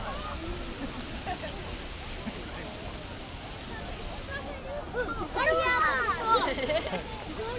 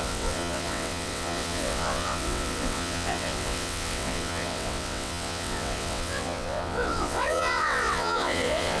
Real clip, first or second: first